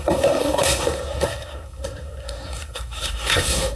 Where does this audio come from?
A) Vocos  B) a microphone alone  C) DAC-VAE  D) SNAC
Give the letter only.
D